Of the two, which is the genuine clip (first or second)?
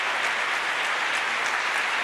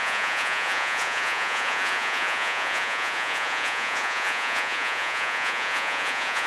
first